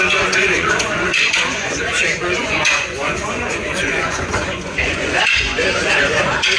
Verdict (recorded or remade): remade